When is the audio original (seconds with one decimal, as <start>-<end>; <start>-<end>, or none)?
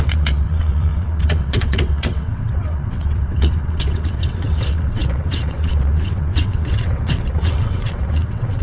none